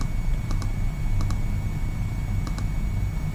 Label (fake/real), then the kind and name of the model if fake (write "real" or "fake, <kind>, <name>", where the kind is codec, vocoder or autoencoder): real